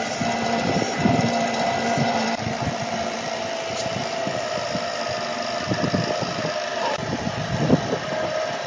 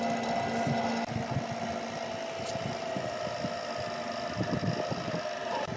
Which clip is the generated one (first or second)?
first